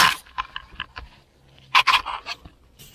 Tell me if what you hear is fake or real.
real